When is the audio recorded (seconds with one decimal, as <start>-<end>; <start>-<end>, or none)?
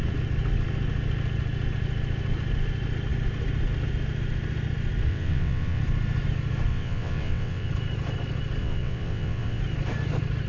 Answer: 0.0-5.1; 5.8-6.7; 7.7-8.6; 9.6-10.5